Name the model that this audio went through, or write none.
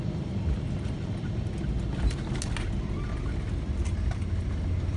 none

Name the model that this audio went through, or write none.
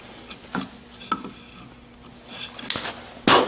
none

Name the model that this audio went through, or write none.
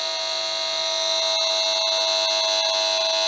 none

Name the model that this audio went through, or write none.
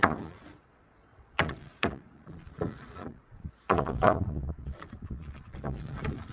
vocoder, Vocos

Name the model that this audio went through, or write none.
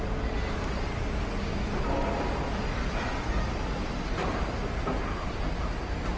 none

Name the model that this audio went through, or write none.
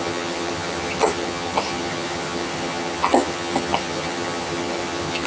vocoder, HiFi-GAN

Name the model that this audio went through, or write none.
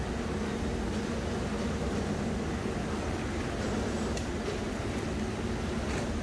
none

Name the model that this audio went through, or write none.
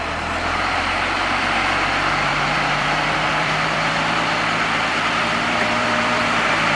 vocoder, BigVGAN v2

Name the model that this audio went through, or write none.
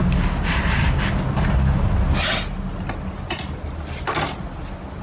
none